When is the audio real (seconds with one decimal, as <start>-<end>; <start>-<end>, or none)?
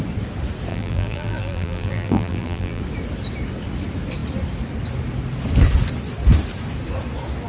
0.0-0.7; 2.8-7.5